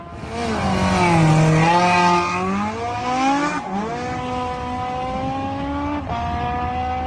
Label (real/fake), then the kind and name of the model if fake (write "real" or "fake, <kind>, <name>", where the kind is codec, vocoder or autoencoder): real